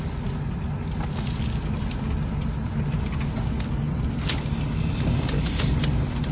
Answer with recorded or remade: recorded